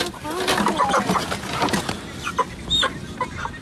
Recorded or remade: recorded